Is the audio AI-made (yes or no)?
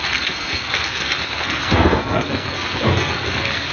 yes